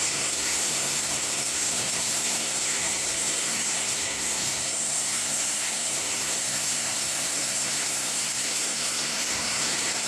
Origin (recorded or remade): remade